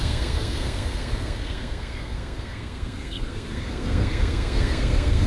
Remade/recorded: remade